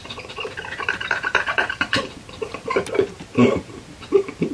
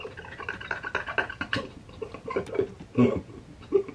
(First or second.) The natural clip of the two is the second